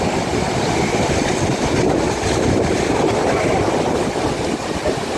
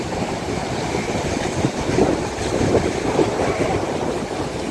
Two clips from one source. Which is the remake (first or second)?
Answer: second